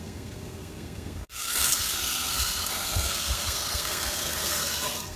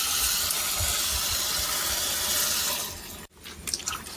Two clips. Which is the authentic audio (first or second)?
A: second